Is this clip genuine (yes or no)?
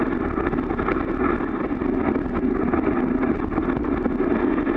yes